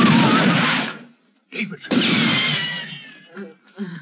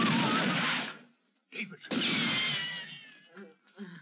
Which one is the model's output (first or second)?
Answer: first